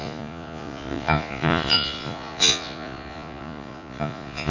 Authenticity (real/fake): fake